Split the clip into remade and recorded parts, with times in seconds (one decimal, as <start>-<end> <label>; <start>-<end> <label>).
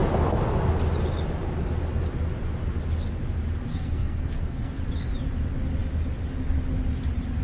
0.0-3.7 recorded; 3.7-4.8 remade; 4.8-7.4 recorded